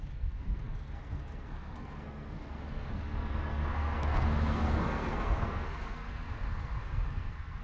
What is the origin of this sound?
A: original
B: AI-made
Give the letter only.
B